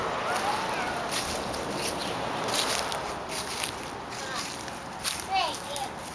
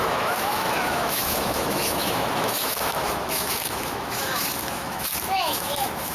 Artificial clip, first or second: second